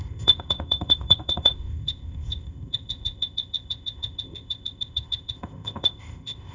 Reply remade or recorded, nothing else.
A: remade